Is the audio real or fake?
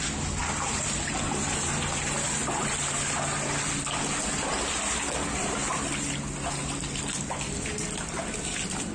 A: real